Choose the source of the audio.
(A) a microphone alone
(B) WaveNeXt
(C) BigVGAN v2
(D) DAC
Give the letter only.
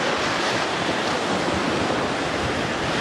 A